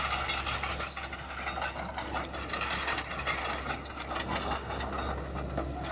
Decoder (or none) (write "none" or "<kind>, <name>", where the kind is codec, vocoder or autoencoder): none